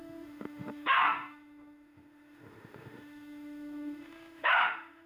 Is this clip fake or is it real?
fake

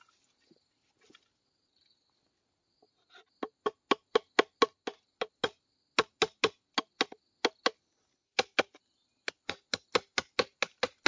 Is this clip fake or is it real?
real